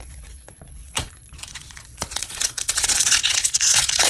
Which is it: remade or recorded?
remade